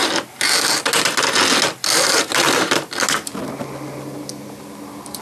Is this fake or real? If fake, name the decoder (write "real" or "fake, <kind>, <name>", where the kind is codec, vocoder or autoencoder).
real